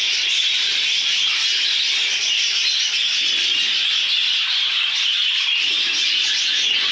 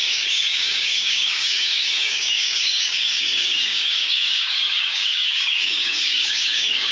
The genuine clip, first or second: first